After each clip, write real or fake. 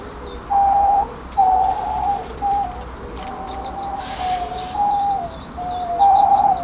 fake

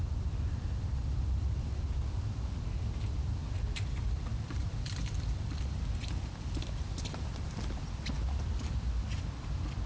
fake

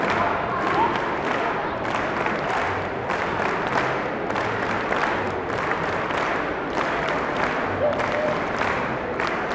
fake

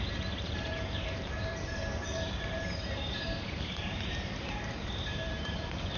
fake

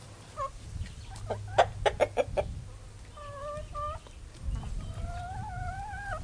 real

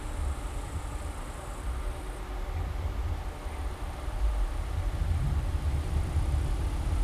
real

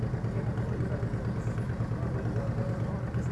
real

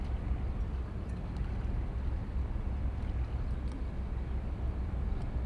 real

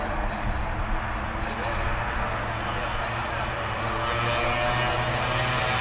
real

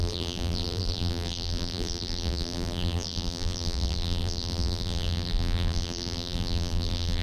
fake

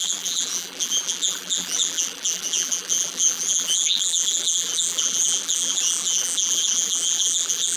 fake